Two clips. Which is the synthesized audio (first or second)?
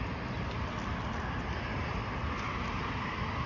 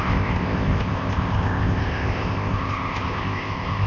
second